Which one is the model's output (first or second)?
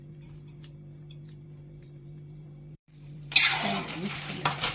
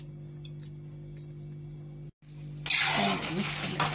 first